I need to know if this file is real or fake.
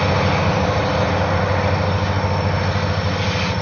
real